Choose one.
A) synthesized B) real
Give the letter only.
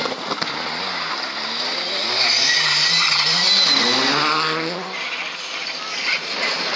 B